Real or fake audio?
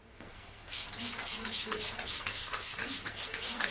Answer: fake